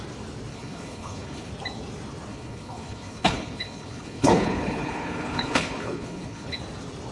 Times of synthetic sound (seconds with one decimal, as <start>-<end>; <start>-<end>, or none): 0.5-1.5; 2.3-6.6